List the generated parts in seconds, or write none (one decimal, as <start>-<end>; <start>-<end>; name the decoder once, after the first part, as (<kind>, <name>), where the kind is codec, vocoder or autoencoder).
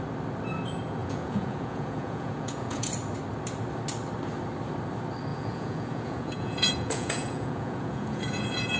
1.0-2.9 (vocoder, Vocos); 5.3-8.8